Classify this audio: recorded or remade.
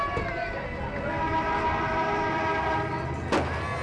recorded